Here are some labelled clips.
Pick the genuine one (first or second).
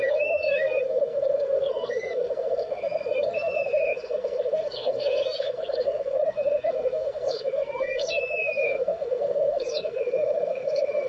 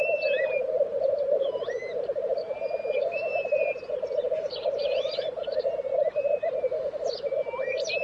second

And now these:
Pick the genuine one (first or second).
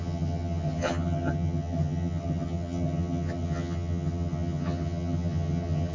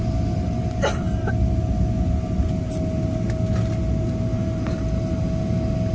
second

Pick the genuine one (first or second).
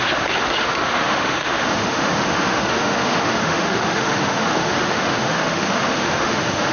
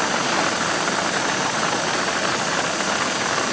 second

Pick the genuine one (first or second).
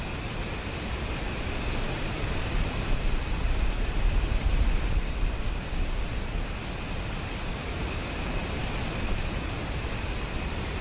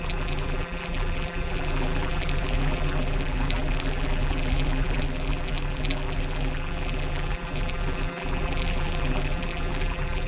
first